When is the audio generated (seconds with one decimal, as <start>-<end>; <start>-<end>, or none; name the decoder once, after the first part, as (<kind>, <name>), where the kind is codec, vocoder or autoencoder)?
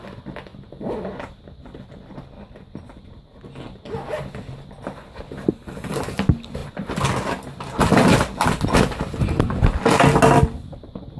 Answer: none